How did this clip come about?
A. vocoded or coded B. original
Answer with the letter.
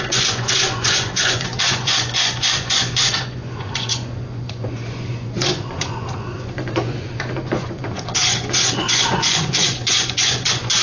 A